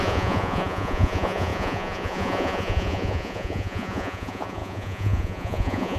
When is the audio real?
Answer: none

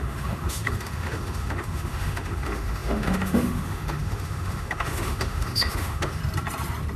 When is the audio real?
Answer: 6.2-7.0

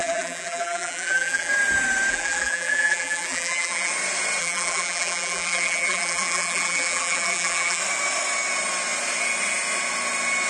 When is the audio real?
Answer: 1.5-2.1; 3.9-4.4; 7.8-10.5

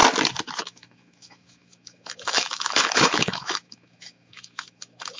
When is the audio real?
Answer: 0.0-0.6

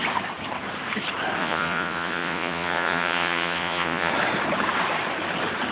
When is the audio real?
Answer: 0.0-1.4; 4.1-5.7

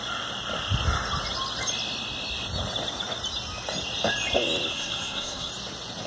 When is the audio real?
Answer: 0.0-4.7; 5.5-6.1